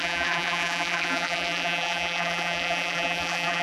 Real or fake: fake